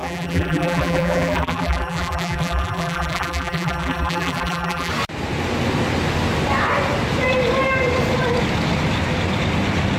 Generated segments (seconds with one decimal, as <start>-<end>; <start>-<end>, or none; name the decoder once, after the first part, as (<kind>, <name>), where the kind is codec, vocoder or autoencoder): 0.0-4.9 (vocoder, BigVGAN v2)